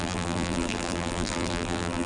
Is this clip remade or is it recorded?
remade